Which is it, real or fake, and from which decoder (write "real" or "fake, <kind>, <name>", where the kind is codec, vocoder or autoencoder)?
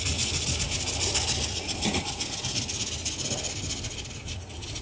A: real